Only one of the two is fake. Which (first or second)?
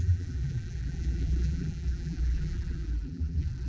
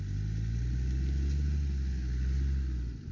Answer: first